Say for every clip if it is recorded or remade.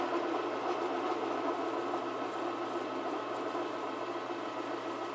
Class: recorded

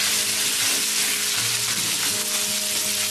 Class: recorded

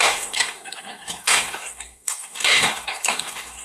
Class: remade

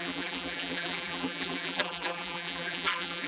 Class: remade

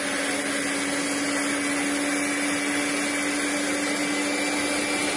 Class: recorded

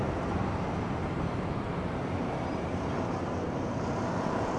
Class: remade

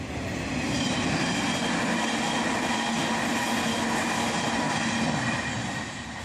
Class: recorded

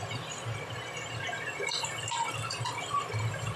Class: recorded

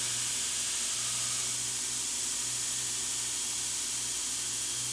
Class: recorded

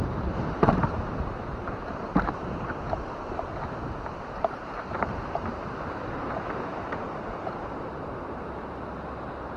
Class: remade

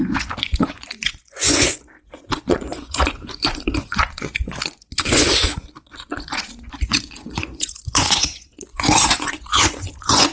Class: remade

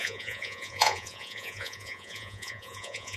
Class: remade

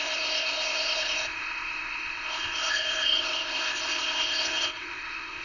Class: remade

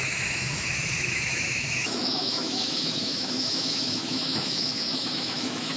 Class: remade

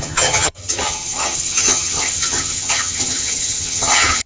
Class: remade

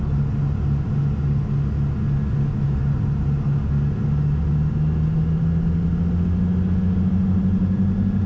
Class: recorded